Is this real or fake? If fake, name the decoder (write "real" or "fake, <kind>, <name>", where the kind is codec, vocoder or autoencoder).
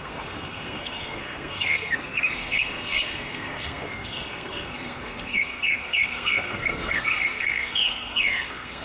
fake, codec, SNAC